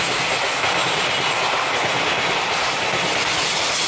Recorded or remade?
recorded